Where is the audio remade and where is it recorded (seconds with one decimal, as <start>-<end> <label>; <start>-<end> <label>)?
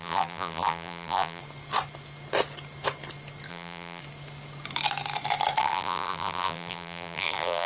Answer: 0.0-1.4 remade; 1.4-3.5 recorded; 3.5-4.0 remade; 4.0-5.6 recorded; 5.6-7.7 remade